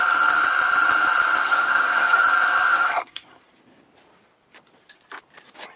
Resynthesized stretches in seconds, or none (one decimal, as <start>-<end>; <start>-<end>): 1.4-2.3; 2.7-3.4